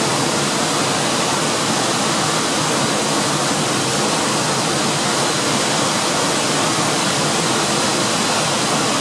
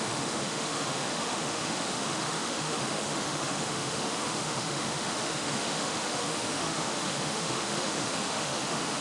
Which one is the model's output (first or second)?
second